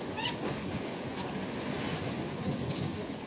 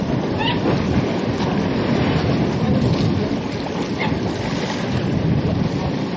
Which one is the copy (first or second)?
first